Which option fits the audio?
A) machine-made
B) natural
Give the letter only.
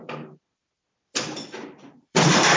A